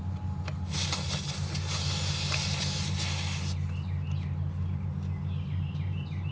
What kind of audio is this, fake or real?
real